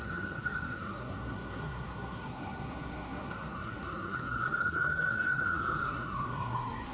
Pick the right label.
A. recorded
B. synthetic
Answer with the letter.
B